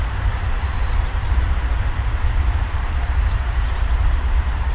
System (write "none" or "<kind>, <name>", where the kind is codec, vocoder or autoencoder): vocoder, BigVGAN v2